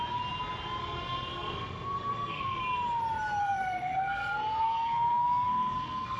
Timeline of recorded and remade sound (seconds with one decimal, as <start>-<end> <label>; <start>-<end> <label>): 0.0-0.8 recorded; 0.8-2.6 remade; 2.6-3.4 recorded; 3.4-6.2 remade